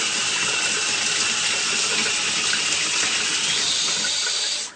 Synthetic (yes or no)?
no